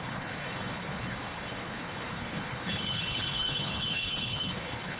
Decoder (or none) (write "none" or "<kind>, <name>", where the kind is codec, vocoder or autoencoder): codec, HILCodec